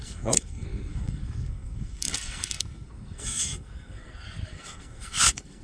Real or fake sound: fake